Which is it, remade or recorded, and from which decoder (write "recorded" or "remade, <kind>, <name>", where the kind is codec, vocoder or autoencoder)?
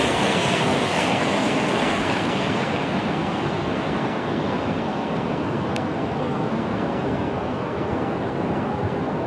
remade, codec, SNAC